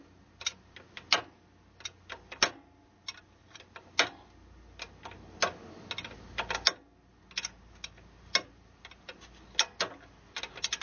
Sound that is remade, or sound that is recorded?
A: recorded